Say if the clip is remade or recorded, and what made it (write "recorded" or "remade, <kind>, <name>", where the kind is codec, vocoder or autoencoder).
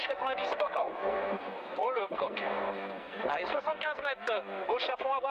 remade, codec, SNAC